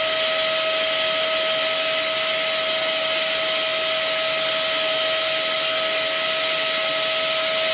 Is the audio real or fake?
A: real